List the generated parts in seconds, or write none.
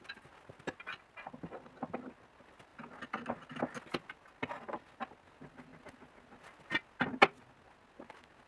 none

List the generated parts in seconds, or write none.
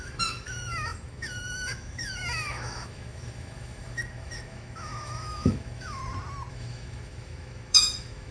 0.0-6.0 (autoencoder, DAC-VAE); 6.5-8.3